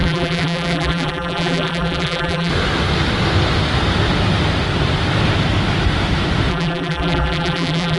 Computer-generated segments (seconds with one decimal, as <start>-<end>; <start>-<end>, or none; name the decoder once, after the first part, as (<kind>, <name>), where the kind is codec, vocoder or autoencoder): 0.0-2.5 (vocoder, BigVGAN v2); 6.5-8.0